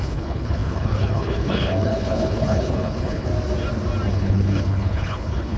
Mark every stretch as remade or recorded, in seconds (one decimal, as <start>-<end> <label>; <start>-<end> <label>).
0.0-3.3 remade; 3.3-4.1 recorded; 4.1-5.6 remade

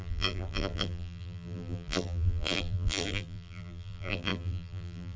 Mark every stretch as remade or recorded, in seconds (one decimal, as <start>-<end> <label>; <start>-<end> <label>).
0.0-5.2 remade

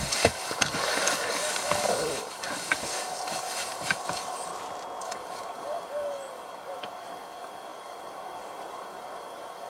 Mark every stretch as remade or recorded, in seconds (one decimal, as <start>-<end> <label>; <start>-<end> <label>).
0.0-4.5 remade; 4.5-5.0 recorded; 5.0-9.7 remade

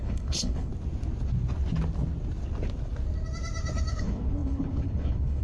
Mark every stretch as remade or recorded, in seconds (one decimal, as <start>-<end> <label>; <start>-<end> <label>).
0.0-0.7 remade; 0.7-3.9 recorded; 3.9-5.4 remade

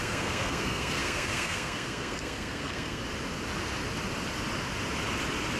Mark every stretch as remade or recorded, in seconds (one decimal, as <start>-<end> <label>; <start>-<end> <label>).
0.0-3.0 remade; 3.0-5.6 recorded

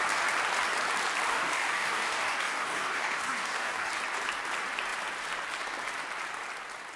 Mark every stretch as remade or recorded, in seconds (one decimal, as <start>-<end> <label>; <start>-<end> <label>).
0.0-1.3 recorded; 1.3-3.9 remade; 3.9-7.0 recorded

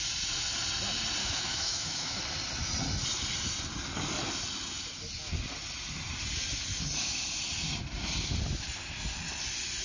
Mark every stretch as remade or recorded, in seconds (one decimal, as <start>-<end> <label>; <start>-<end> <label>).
0.0-1.2 recorded; 1.2-2.2 remade; 2.2-9.8 recorded